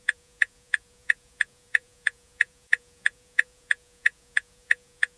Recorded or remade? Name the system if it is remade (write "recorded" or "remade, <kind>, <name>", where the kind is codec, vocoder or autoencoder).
remade, vocoder, Vocos